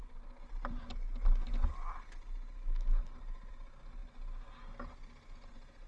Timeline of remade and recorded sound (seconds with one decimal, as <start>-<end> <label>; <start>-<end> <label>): 0.0-5.9 recorded